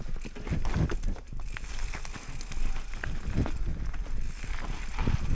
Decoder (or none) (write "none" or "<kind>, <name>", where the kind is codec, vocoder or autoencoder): none